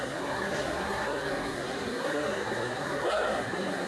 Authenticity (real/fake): fake